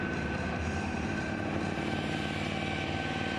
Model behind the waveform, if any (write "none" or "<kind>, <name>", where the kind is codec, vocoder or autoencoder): none